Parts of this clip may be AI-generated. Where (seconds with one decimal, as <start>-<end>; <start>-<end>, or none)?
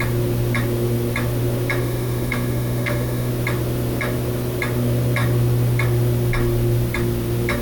1.8-3.3